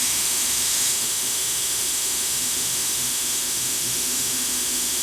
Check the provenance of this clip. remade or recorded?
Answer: remade